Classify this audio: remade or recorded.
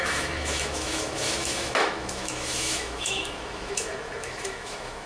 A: remade